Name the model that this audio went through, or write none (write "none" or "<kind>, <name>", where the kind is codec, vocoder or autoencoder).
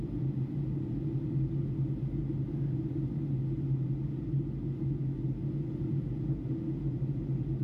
none